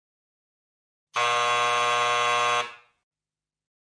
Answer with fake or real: real